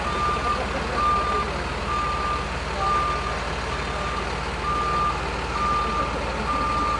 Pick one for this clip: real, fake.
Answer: real